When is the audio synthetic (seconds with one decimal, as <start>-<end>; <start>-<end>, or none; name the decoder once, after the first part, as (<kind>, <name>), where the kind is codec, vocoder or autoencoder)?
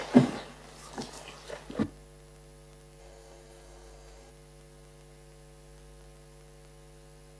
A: 3.0-4.3 (codec, SNAC)